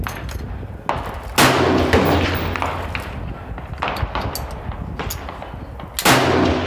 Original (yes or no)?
yes